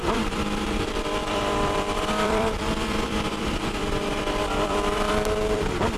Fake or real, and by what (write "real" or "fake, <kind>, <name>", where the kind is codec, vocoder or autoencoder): fake, vocoder, BigVGAN v2